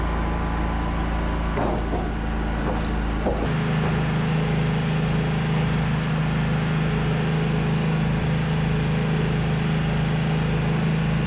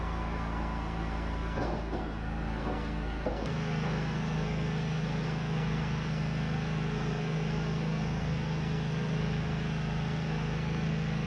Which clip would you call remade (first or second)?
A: second